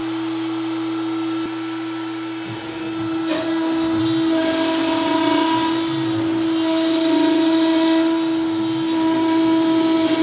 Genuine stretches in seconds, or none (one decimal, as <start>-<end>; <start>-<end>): 0.0-10.2